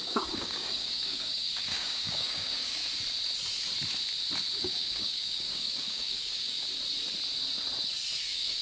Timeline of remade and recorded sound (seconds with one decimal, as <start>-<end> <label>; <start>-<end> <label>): 0.0-2.8 remade; 2.8-4.6 recorded; 4.6-6.6 remade; 6.6-8.2 recorded; 8.2-8.6 remade